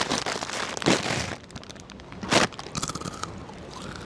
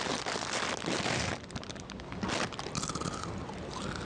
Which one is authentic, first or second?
second